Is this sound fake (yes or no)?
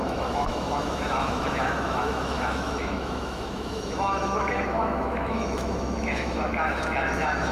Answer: yes